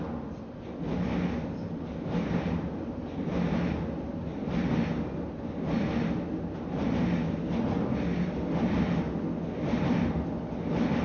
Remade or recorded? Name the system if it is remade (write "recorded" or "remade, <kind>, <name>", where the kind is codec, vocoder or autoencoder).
recorded